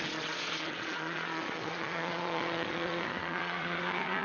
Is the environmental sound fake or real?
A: fake